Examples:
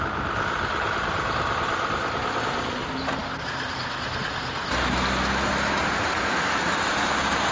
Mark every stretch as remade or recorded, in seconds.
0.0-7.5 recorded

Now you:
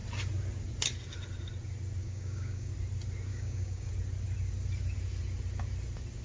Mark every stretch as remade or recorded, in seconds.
0.0-2.0 recorded; 2.0-2.7 remade; 2.7-3.3 recorded; 3.3-3.9 remade; 3.9-6.2 recorded

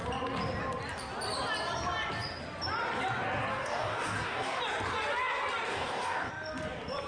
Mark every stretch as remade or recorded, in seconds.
0.0-3.5 recorded; 3.5-4.6 remade; 4.6-5.7 recorded; 5.7-6.3 remade; 6.3-7.1 recorded

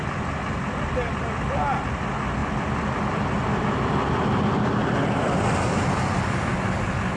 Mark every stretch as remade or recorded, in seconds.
0.0-7.2 recorded